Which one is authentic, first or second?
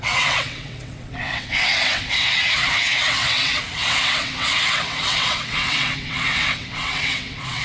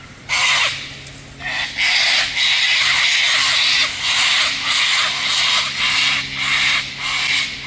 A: second